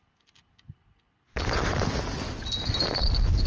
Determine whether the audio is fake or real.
real